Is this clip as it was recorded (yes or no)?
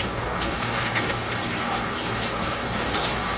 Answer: no